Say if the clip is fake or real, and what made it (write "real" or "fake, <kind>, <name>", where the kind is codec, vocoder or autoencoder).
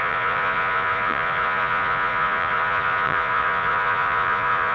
fake, vocoder, Vocos